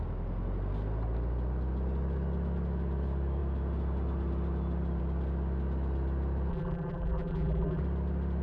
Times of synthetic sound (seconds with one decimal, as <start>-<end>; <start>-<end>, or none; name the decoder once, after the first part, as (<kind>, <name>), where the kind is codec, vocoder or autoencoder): 6.5-7.8 (vocoder, BigVGAN v2)